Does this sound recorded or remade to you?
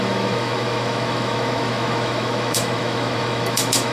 remade